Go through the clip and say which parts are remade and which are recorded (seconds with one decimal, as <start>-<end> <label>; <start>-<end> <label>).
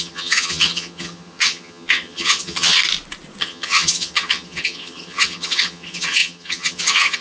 0.0-2.8 remade; 2.8-3.4 recorded; 3.4-7.2 remade